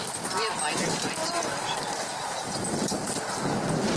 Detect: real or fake real